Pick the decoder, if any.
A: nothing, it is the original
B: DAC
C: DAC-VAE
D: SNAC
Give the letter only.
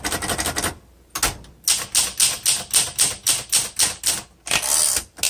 A